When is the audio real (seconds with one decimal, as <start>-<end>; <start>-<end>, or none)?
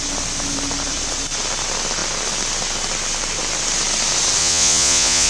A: 0.0-4.4